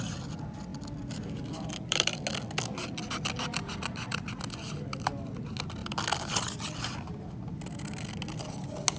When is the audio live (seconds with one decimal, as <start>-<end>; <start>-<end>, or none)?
0.0-9.0